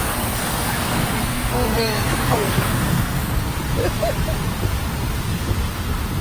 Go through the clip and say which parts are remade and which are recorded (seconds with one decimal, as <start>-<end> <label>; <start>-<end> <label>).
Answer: 0.0-3.4 remade; 3.4-6.2 recorded